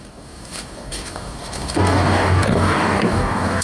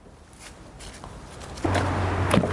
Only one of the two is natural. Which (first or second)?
second